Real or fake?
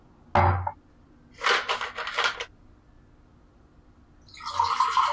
real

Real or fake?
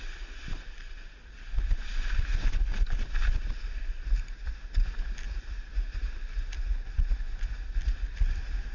real